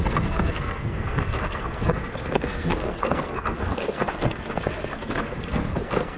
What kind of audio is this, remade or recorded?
remade